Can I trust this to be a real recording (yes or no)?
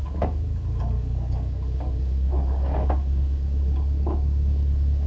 no